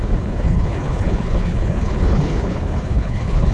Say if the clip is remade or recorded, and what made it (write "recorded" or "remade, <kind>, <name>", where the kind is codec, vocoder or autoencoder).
remade, codec, HILCodec